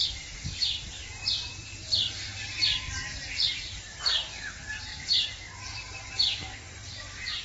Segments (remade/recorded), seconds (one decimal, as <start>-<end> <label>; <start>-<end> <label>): 0.0-2.3 remade; 2.3-2.9 recorded; 2.9-7.4 remade